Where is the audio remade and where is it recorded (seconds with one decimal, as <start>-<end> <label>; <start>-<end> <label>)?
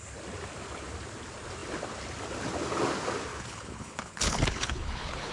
0.0-3.3 recorded; 3.3-5.3 remade